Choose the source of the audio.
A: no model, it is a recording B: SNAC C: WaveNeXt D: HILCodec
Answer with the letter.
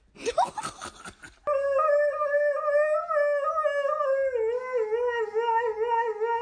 A